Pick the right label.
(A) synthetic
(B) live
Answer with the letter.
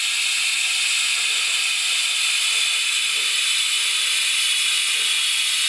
B